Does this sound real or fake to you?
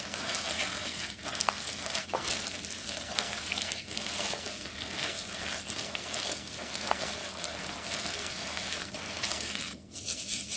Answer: fake